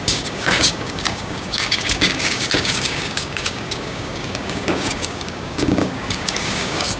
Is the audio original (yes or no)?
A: no